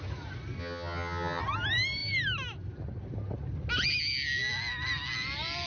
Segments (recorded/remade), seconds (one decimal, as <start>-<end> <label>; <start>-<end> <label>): 0.0-0.6 recorded; 0.6-1.4 remade; 1.4-5.7 recorded